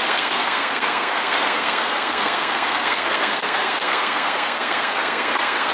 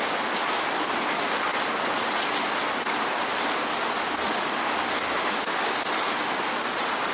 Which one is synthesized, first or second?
first